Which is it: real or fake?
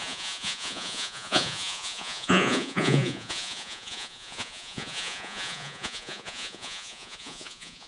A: fake